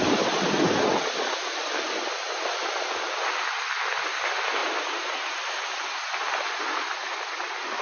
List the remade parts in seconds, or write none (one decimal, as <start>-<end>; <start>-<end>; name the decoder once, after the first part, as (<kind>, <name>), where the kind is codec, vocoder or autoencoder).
none

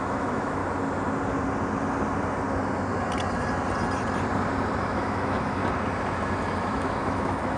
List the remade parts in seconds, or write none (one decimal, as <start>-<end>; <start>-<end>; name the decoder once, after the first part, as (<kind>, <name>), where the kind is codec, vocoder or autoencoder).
0.0-0.6 (autoencoder, DAC-VAE); 4.8-5.6; 6.6-7.6

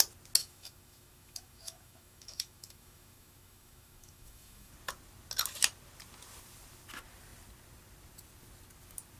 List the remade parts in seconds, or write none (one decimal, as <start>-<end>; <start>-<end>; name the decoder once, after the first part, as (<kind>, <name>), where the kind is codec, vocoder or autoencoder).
0.4-4.7 (autoencoder, DAC-VAE)